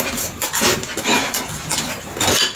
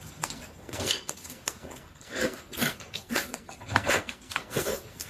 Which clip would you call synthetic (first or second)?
second